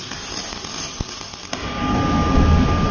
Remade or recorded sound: recorded